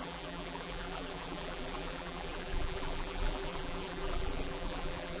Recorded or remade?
remade